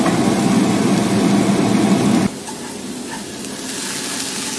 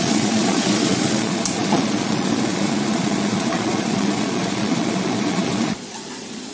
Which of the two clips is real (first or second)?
first